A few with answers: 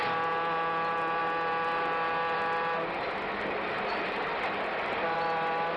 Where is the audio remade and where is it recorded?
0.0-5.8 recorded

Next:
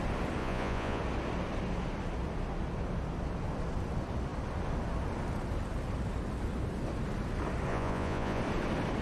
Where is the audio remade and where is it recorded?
0.0-0.4 recorded; 0.4-1.0 remade; 1.0-7.7 recorded; 7.7-8.4 remade; 8.4-9.0 recorded

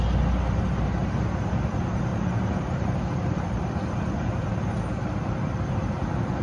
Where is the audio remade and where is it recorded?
0.0-2.1 recorded; 2.1-3.7 remade; 3.7-6.4 recorded

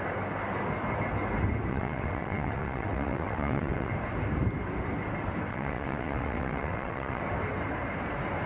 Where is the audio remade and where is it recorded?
0.0-1.7 recorded; 1.7-3.9 remade; 3.9-5.5 recorded; 5.5-7.2 remade; 7.2-8.5 recorded

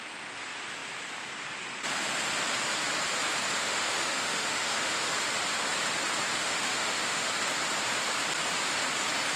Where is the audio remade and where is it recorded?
0.0-3.6 recorded; 3.6-5.1 remade; 5.1-6.3 recorded; 6.3-7.3 remade; 7.3-9.4 recorded

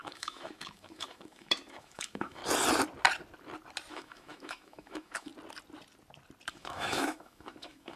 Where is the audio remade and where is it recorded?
0.0-2.4 remade; 2.4-3.9 recorded; 3.9-5.3 remade; 5.3-6.5 recorded; 6.5-8.0 remade

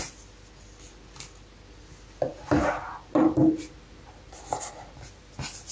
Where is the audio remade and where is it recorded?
0.0-5.7 recorded